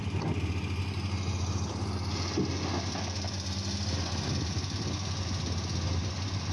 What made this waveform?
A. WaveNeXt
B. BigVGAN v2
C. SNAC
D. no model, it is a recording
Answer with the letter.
D